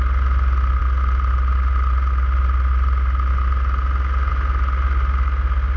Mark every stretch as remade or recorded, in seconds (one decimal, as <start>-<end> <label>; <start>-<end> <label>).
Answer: 0.0-5.8 recorded